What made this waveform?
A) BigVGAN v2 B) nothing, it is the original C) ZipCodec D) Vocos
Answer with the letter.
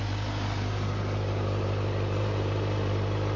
B